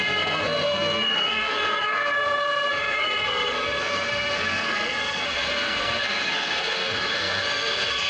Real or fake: fake